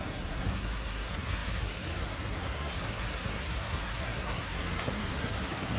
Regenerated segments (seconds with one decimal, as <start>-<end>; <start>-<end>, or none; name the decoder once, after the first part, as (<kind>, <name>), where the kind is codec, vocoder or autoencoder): 0.0-5.8 (codec, SNAC)